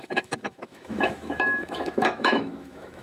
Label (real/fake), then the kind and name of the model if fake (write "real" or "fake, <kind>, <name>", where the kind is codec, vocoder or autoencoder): fake, autoencoder, DAC-VAE